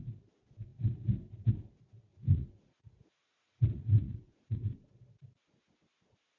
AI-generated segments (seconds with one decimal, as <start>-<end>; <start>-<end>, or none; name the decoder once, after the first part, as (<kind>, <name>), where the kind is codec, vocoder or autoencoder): 2.1-4.9 (vocoder, Vocos)